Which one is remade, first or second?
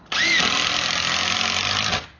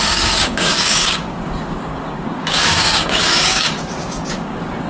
second